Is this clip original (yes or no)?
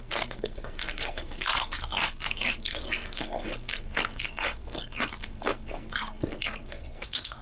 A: no